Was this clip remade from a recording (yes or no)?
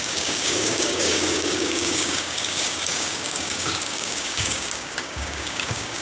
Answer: yes